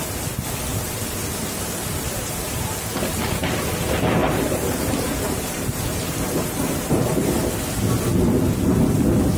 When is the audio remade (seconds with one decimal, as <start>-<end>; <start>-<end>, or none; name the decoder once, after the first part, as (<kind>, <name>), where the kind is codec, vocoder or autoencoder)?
0.7-2.7 (vocoder, BigVGAN v2); 4.2-7.5

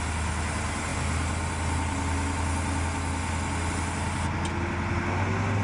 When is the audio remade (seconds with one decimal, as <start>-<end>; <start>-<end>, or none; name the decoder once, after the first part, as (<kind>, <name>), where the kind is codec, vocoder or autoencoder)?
none

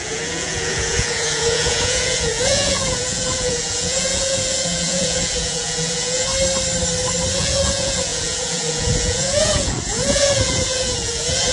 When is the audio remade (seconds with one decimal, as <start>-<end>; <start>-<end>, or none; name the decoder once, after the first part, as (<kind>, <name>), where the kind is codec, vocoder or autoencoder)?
0.0-6.3 (vocoder, Vocos); 7.3-11.5

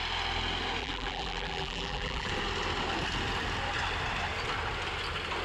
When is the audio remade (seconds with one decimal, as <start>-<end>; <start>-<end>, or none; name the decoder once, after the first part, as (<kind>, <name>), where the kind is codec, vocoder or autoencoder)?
0.8-2.3 (vocoder, BigVGAN v2)

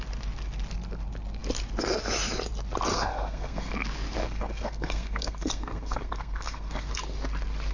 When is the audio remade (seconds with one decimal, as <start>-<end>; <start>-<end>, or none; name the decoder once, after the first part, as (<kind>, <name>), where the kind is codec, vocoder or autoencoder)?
2.9-3.7 (codec, SNAC); 4.2-6.9

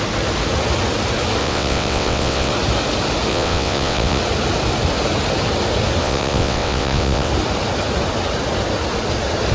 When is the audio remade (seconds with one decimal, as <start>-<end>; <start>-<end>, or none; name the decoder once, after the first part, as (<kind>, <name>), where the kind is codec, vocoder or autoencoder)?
1.4-2.5 (vocoder, WaveNeXt); 3.3-4.2; 6.0-7.3

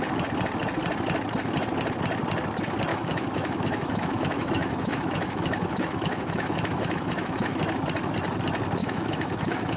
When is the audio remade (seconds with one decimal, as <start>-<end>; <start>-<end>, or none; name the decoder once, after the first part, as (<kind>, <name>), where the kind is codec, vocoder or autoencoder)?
2.9-7.6 (autoencoder, DAC-VAE); 8.8-9.8

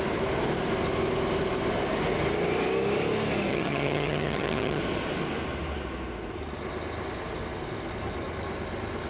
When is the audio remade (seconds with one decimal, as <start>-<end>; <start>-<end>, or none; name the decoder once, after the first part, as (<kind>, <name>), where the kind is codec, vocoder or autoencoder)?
3.5-4.8 (vocoder, HiFi-GAN)